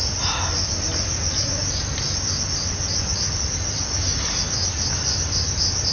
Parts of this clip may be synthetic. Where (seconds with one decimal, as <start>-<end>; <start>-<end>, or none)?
none